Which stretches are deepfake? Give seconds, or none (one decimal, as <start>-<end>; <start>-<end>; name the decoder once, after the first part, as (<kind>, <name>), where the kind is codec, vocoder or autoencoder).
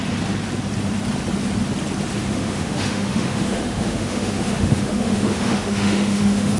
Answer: 2.2-6.6 (autoencoder, DAC-VAE)